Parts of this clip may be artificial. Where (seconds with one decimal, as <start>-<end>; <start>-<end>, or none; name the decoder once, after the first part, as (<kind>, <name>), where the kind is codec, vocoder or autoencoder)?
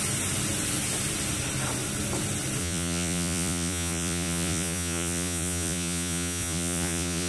2.6-7.3 (vocoder, Vocos)